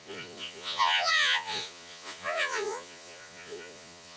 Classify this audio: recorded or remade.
remade